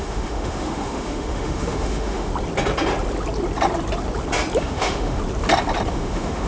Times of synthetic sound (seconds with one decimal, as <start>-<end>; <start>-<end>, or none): 0.0-2.3; 4.6-5.2; 5.9-6.5